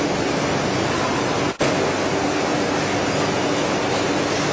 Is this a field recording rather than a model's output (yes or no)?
yes